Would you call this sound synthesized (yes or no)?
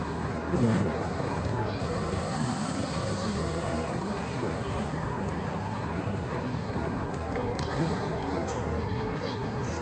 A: yes